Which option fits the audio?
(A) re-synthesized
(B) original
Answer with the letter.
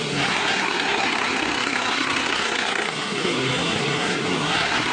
A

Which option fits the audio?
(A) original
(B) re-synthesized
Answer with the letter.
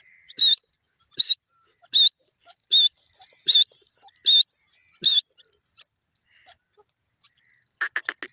A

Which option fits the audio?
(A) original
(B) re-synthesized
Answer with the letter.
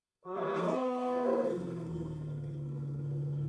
B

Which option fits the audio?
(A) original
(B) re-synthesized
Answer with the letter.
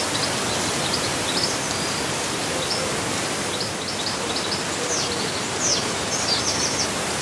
A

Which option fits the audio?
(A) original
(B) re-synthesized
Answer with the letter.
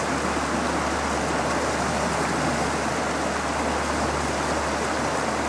A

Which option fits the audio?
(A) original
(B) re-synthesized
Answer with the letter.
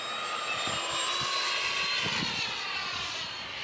A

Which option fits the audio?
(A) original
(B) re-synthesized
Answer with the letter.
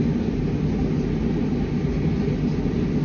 A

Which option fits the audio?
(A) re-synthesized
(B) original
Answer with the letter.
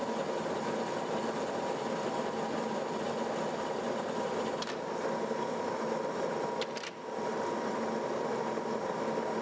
B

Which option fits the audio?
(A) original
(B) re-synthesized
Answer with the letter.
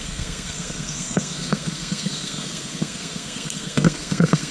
B